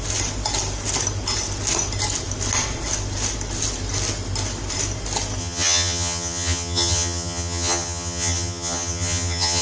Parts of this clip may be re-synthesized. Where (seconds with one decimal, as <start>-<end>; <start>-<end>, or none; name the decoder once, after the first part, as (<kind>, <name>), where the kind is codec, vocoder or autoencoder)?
5.4-9.6 (vocoder, HiFi-GAN)